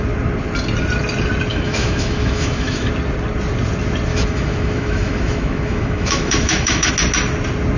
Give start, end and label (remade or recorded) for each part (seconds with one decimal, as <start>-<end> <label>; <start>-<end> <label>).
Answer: 0.0-1.5 recorded; 1.5-2.9 remade; 2.9-4.1 recorded; 4.1-6.9 remade; 6.9-7.8 recorded